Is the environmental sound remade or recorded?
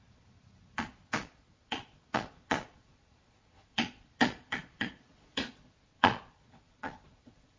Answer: remade